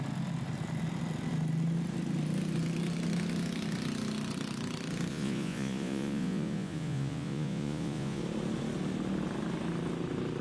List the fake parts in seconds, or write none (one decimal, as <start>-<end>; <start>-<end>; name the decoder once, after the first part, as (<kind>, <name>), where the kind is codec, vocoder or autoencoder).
5.1-8.2 (vocoder, Vocos)